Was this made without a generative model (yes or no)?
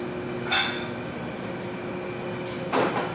yes